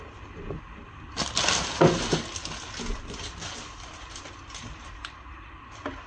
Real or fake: real